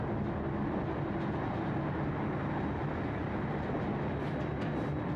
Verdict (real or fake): real